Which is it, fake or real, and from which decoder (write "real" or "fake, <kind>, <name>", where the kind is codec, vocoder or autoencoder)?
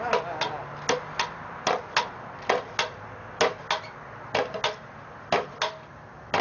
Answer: real